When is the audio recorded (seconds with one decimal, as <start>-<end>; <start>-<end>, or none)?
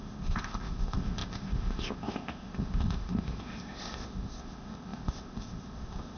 none